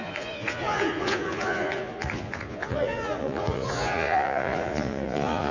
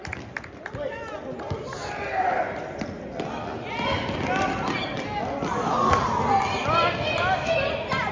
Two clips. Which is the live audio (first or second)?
second